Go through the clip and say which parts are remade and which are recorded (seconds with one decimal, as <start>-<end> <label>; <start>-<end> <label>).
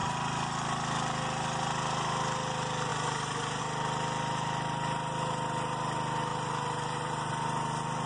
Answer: 0.0-2.9 recorded; 2.9-3.6 remade; 3.6-6.3 recorded; 6.3-7.3 remade; 7.3-8.1 recorded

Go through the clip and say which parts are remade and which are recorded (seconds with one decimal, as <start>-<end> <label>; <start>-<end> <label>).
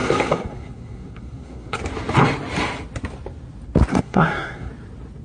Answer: 0.0-1.8 remade; 1.8-3.9 recorded; 3.9-4.7 remade; 4.7-5.2 recorded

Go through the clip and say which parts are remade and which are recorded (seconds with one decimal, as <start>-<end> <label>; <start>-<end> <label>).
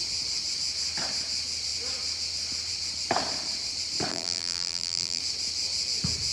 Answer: 0.0-4.1 recorded; 4.1-5.2 remade; 5.2-6.3 recorded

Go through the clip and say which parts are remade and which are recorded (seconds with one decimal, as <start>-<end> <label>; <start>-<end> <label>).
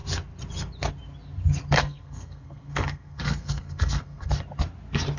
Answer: 0.0-1.8 recorded; 1.8-4.3 remade; 4.3-5.2 recorded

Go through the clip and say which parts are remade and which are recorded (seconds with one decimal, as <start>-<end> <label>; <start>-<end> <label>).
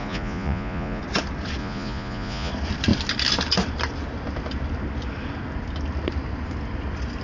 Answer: 0.0-1.0 remade; 1.0-1.6 recorded; 1.6-2.5 remade; 2.5-7.2 recorded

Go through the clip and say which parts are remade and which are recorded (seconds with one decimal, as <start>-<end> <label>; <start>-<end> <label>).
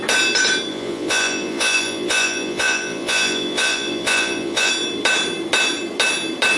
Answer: 0.0-0.7 recorded; 0.7-4.7 remade; 4.7-6.6 recorded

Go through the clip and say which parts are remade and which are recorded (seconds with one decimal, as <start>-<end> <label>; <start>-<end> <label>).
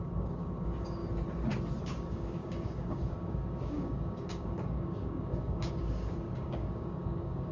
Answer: 0.0-1.0 remade; 1.0-1.8 recorded; 1.8-7.5 remade